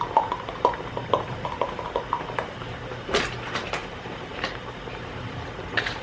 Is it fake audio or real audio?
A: fake